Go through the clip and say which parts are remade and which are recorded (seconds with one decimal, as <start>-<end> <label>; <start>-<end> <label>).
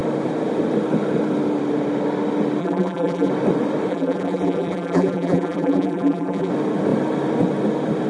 0.0-2.6 recorded; 2.6-3.3 remade; 3.3-3.9 recorded; 3.9-6.5 remade; 6.5-8.1 recorded